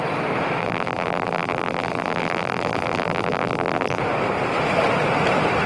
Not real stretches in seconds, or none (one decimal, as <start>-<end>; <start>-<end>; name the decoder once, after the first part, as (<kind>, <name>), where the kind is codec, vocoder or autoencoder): 0.6-4.0 (vocoder, BigVGAN v2)